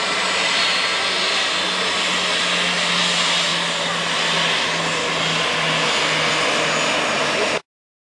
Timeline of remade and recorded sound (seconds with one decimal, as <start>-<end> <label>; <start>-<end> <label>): 0.0-8.0 recorded